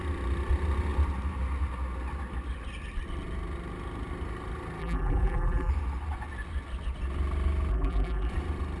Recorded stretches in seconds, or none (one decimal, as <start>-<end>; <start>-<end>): 0.0-4.8; 5.7-7.7; 8.3-8.8